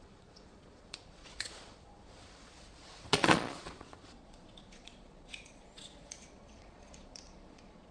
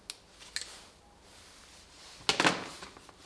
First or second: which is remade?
first